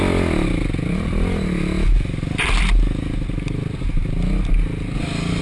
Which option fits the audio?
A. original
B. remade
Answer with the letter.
A